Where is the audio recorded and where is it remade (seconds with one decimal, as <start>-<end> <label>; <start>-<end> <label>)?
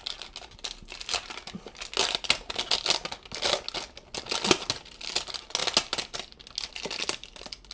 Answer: 0.0-7.7 recorded